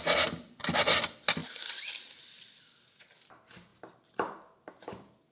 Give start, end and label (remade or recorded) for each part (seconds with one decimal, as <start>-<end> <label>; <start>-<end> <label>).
0.0-5.3 recorded